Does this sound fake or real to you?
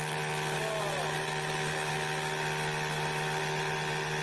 real